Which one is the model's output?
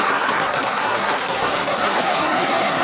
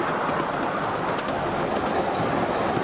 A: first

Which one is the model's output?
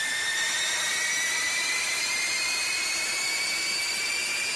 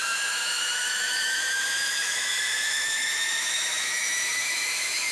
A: second